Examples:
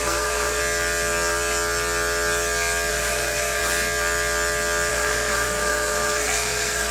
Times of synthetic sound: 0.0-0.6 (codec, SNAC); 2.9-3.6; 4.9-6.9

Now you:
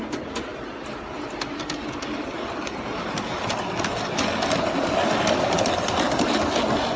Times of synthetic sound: none

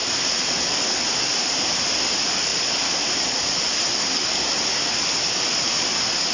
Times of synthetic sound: none

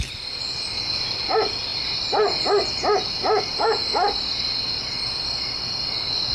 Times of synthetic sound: none